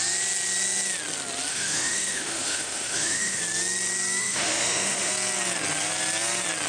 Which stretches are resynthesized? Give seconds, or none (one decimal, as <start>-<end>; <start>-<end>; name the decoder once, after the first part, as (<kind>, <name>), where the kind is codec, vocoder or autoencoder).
1.5-3.4 (autoencoder, DAC-VAE); 4.2-5.1